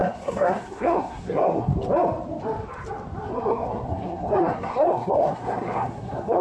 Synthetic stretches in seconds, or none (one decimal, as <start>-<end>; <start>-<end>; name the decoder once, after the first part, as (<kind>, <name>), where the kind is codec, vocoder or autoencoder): 0.0-1.7 (codec, SNAC); 3.3-6.4